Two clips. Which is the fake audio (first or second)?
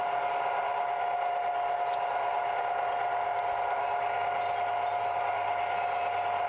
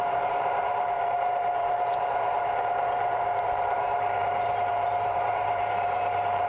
second